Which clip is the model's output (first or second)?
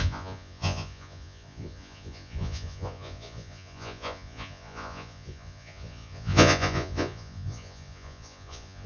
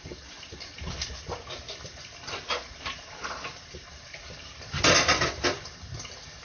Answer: first